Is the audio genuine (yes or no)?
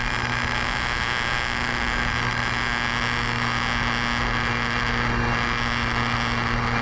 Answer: yes